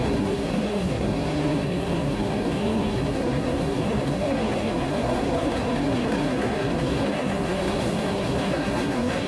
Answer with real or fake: fake